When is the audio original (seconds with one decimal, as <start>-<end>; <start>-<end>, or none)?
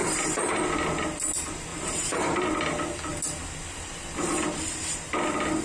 0.6-1.7; 2.5-5.6